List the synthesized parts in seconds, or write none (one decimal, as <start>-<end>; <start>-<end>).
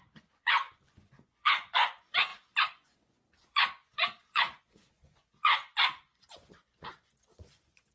0.0-7.9